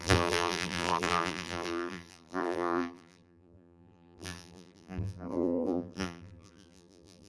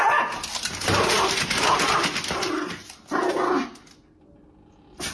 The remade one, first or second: first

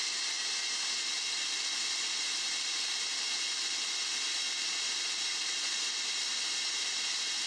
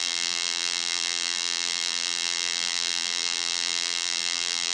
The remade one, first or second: second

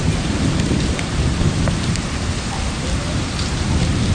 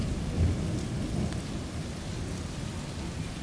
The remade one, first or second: first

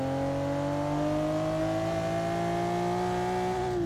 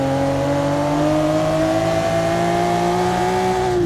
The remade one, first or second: second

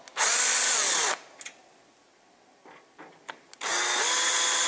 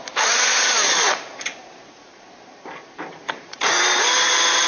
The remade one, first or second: second